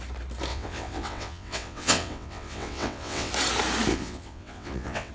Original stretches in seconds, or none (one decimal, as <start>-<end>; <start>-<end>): 0.0-0.5; 3.3-3.9

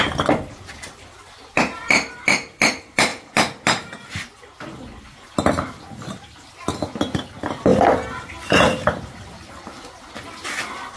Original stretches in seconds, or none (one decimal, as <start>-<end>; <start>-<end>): 0.0-11.0

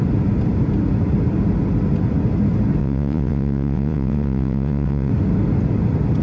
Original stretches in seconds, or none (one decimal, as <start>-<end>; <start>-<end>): 0.0-2.8; 5.1-6.2

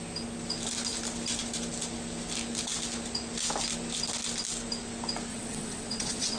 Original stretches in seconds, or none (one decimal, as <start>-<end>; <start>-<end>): 0.0-5.3